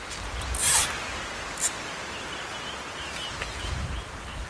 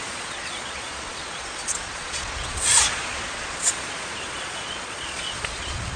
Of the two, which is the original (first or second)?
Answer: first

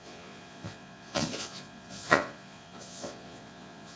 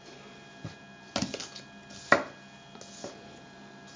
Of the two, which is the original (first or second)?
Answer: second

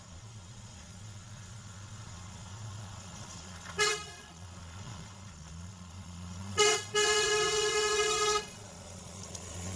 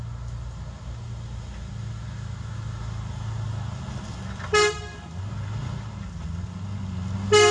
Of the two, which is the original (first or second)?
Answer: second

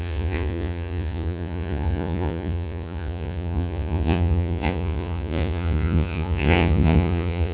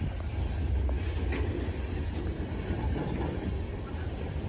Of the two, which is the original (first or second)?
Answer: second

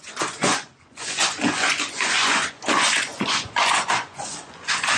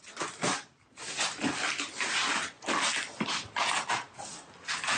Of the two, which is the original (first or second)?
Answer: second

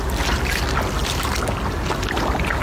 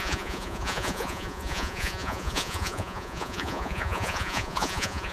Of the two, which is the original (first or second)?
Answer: first